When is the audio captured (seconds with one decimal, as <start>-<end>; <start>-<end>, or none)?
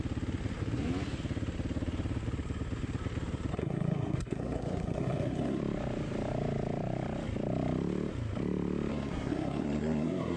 0.0-3.5; 5.6-8.9